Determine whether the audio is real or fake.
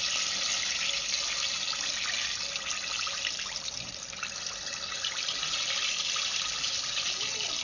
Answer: real